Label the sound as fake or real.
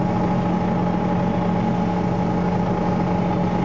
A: real